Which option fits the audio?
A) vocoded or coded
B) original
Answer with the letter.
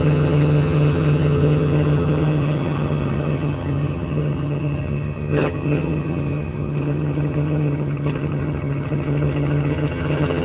A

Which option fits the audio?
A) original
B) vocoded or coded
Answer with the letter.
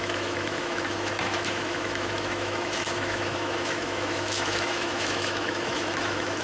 B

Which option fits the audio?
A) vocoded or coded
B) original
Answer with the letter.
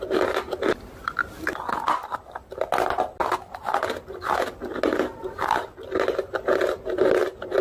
B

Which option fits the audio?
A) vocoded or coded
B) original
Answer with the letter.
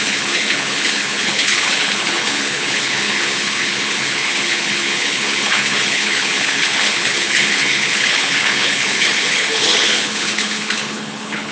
A